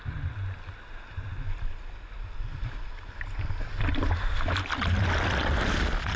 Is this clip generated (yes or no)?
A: no